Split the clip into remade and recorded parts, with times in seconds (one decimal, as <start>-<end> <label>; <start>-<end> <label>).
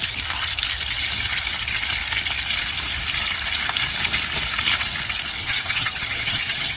0.0-5.4 recorded; 5.4-6.8 remade